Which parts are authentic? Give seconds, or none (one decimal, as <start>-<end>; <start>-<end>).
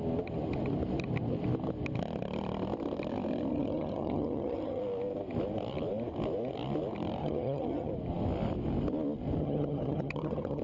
0.0-3.5; 4.8-7.2; 7.9-9.4